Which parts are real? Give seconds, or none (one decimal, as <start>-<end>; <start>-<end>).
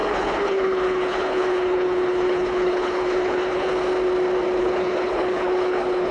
3.7-4.6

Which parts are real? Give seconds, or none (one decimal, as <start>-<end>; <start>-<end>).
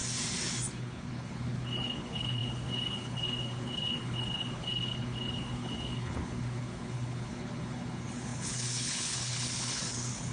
0.0-0.7